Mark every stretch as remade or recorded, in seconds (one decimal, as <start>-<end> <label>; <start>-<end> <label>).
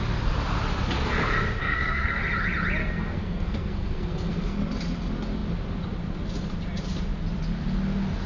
0.0-1.6 recorded; 1.6-2.2 remade; 2.2-2.8 recorded; 2.8-4.7 remade; 4.7-8.3 recorded